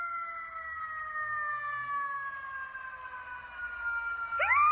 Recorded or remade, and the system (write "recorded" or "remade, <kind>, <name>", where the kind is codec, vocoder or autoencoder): recorded